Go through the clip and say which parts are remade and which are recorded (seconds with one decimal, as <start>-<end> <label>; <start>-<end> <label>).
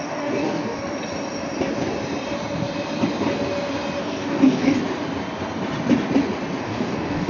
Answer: 0.0-0.8 remade; 0.8-4.0 recorded; 4.0-4.8 remade; 4.8-6.6 recorded; 6.6-7.3 remade